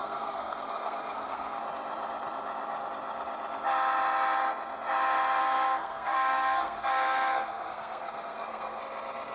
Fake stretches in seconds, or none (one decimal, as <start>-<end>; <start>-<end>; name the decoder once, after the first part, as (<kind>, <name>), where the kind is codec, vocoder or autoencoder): 0.0-1.6 (codec, SNAC); 5.4-8.8